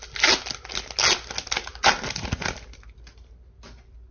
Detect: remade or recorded recorded